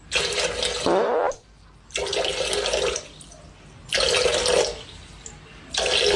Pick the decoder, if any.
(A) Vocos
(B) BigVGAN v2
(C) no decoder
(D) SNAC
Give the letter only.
C